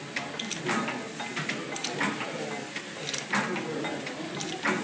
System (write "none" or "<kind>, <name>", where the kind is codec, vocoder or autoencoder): none